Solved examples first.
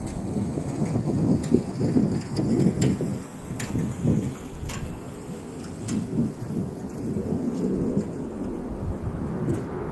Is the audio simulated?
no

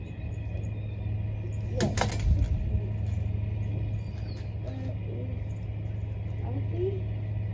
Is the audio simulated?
no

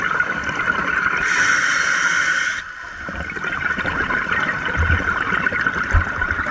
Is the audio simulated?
no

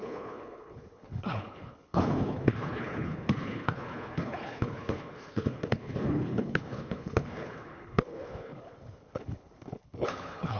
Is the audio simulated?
yes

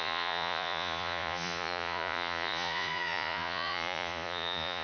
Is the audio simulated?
yes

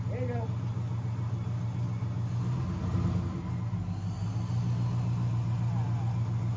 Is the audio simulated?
no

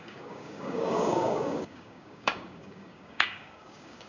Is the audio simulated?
yes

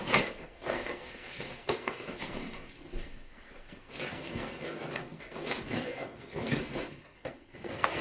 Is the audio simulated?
yes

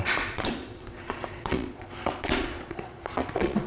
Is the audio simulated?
yes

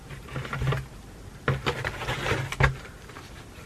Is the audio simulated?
no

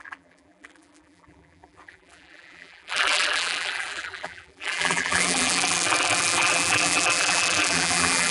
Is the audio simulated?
yes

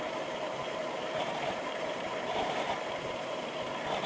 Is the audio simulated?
yes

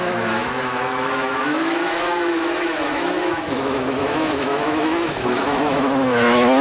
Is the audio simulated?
yes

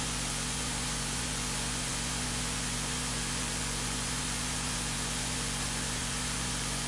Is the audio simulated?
yes